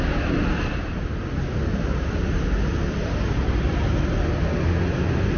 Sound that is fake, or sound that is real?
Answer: real